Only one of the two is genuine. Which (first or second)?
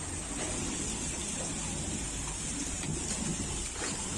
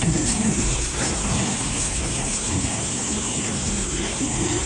first